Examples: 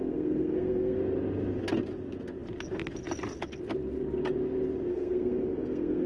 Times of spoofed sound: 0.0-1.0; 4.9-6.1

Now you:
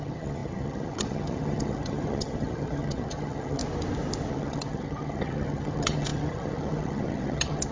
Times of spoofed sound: 0.0-3.6; 4.3-7.7

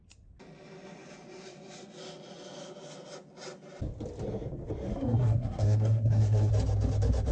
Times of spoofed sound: 4.9-6.5

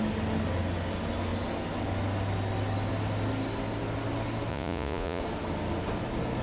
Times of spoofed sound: 4.5-5.2

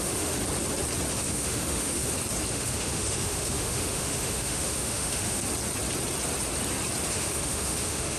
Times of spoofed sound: 0.0-0.4; 1.1-2.0; 2.5-5.4; 7.1-8.2

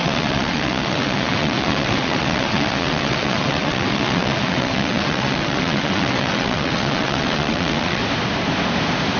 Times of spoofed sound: 0.0-8.0

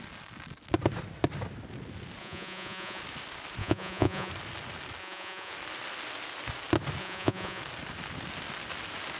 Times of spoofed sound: 2.2-3.0; 3.6-4.3; 5.0-5.5; 7.0-7.6